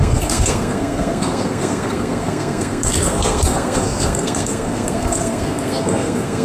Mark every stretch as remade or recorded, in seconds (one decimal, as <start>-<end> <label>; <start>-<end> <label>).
0.0-6.4 remade